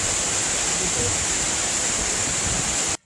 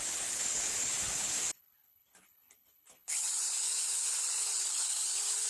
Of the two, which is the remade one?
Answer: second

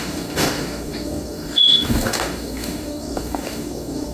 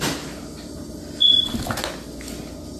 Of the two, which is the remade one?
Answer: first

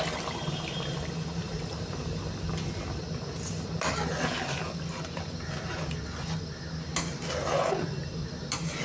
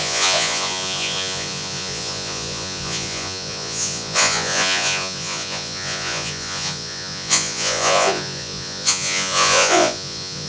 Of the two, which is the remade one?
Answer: second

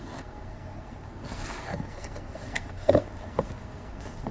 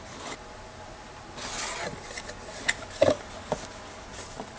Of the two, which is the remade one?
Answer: first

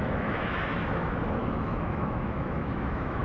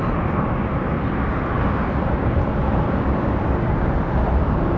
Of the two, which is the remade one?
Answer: first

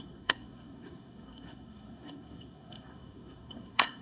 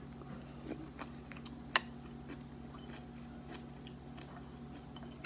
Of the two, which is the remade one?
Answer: first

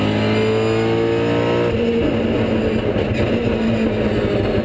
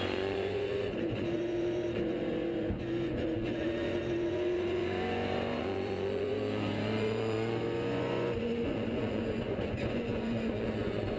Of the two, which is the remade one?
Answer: second